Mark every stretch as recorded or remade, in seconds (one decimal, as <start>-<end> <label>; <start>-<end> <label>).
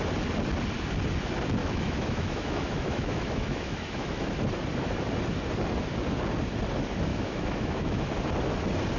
0.0-1.6 recorded; 1.6-4.3 remade; 4.3-7.1 recorded; 7.1-8.1 remade; 8.1-9.0 recorded